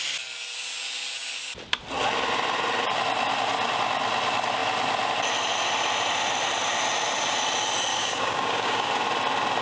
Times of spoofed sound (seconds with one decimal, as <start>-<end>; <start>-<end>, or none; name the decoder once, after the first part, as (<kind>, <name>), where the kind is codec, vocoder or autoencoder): 7.9-8.9 (codec, DAC)

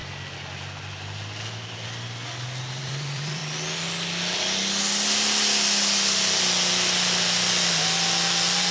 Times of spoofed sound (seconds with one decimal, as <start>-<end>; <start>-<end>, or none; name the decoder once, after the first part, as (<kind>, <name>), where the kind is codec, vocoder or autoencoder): 2.7-3.4 (vocoder, BigVGAN v2)

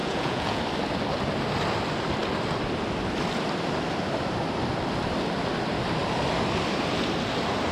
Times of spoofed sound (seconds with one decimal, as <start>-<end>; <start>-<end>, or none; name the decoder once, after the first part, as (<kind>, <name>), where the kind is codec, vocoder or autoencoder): 0.0-0.6 (vocoder, Vocos)

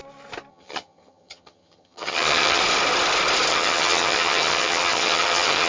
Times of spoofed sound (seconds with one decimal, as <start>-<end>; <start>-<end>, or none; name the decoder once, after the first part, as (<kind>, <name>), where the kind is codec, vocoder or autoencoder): 0.5-2.6 (vocoder, HiFi-GAN); 3.5-5.7

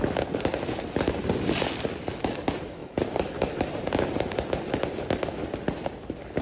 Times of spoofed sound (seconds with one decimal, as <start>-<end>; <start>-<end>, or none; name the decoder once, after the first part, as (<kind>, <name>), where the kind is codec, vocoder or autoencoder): 0.5-1.5 (vocoder, BigVGAN v2); 2.8-5.1

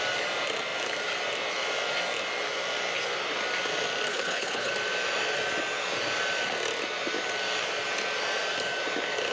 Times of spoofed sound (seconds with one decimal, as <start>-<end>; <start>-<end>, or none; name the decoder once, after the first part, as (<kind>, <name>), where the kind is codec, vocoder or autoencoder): 4.1-4.7 (codec, HILCodec)